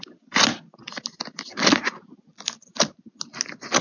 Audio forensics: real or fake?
real